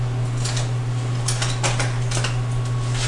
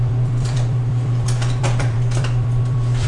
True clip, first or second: first